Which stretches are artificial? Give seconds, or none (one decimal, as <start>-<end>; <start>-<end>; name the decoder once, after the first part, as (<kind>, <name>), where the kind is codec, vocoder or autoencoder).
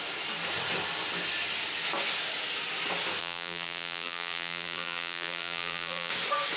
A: 3.2-6.1 (vocoder, BigVGAN v2)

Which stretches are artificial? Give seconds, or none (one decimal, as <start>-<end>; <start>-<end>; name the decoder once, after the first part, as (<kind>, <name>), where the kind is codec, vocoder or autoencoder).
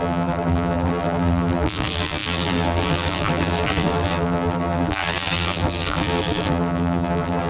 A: 0.0-7.5 (vocoder, BigVGAN v2)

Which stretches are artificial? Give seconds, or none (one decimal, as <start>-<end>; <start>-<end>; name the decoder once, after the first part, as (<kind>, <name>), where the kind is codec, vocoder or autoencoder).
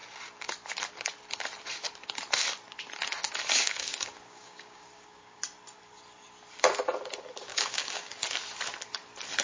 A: 3.6-5.4 (codec, DAC); 7.5-8.1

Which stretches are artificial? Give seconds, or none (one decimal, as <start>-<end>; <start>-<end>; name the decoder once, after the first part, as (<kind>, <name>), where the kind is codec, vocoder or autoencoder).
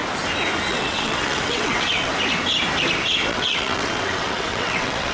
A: 0.7-2.1 (vocoder, WaveNeXt); 3.3-5.1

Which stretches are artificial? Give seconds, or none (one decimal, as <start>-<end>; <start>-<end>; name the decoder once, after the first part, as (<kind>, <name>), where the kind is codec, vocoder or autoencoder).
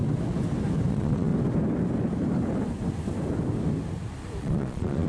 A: 0.9-1.3 (vocoder, Vocos); 4.4-5.1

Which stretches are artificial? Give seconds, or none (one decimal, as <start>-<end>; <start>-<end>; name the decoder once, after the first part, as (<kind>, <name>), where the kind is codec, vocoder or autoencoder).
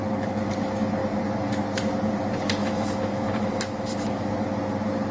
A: 2.6-4.3 (autoencoder, DAC-VAE)